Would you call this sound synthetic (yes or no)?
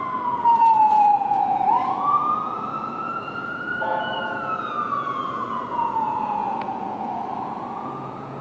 yes